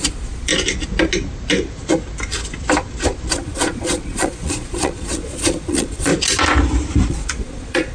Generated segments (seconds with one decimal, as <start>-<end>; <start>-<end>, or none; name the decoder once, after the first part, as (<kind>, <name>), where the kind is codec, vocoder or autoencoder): 0.0-0.5 (vocoder, Vocos); 3.3-6.1; 7.1-7.9